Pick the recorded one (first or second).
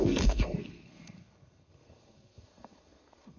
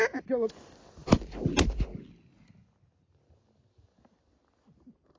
second